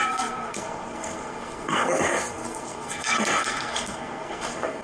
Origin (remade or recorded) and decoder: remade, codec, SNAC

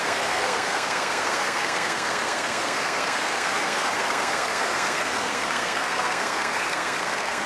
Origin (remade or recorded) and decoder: remade, codec, SNAC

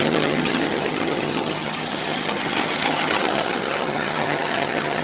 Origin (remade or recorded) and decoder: remade, vocoder, HiFi-GAN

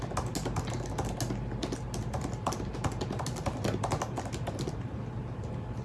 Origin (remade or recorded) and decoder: recorded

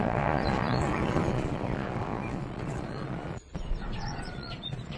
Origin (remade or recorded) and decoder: remade, vocoder, Vocos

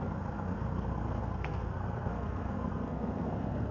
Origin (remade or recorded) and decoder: remade, codec, SNAC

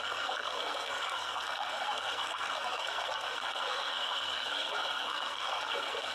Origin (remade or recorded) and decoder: remade, codec, SNAC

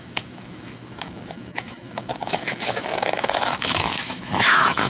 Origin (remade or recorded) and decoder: remade, autoencoder, DAC-VAE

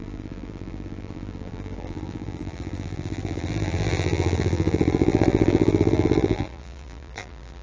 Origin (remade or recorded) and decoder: remade, vocoder, BigVGAN v2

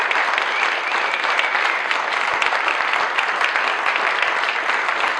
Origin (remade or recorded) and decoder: recorded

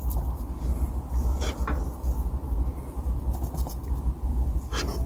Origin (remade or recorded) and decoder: recorded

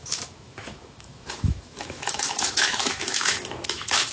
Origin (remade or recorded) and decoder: remade, autoencoder, DAC-VAE